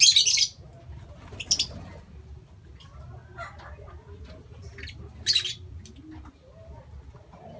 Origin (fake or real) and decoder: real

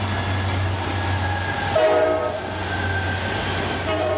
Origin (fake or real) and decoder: real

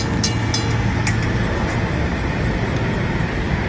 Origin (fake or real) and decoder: real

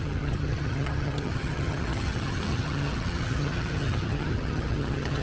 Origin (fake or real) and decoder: fake, vocoder, HiFi-GAN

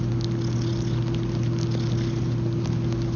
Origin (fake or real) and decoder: real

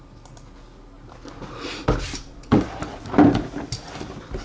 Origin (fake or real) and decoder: real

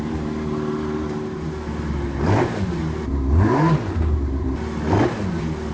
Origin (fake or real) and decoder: real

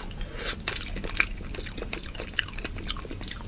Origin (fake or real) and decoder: real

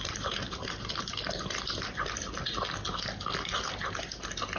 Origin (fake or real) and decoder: real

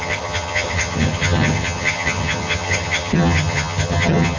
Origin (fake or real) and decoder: fake, vocoder, HiFi-GAN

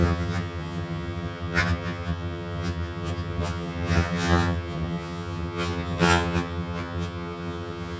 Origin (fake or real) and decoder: fake, vocoder, HiFi-GAN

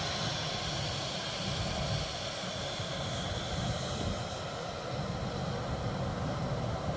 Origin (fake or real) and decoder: real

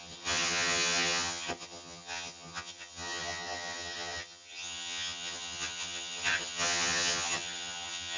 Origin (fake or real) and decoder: fake, vocoder, HiFi-GAN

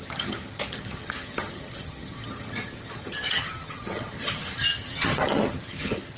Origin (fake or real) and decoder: fake, vocoder, HiFi-GAN